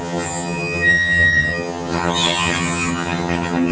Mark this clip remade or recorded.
remade